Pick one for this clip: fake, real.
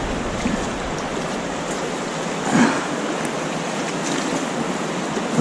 real